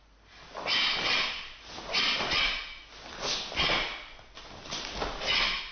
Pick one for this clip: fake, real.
real